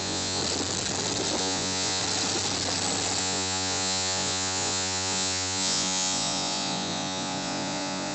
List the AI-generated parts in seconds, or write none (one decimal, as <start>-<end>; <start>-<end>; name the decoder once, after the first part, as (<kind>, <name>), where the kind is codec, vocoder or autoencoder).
0.0-0.4 (vocoder, Vocos); 1.4-2.0; 3.2-8.1